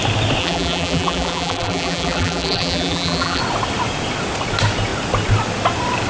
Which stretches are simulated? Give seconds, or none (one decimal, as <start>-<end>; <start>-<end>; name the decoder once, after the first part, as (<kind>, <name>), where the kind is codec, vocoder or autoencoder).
0.4-3.4 (vocoder, BigVGAN v2)